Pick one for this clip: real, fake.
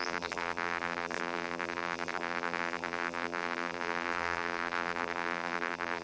fake